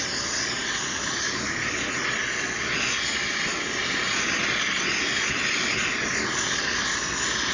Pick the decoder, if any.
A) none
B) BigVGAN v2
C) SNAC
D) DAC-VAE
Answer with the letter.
A